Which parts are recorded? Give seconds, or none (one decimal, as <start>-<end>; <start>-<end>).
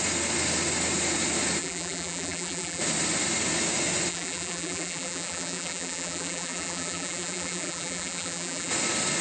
0.0-1.6; 2.8-4.1; 8.7-9.2